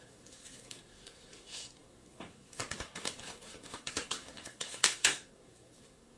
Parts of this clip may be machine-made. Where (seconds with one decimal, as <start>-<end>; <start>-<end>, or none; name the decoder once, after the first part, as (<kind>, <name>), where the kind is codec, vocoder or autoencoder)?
0.0-6.2 (codec, SNAC)